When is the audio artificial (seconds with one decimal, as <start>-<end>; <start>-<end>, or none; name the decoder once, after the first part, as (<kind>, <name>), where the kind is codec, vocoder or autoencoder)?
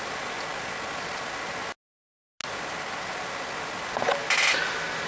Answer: none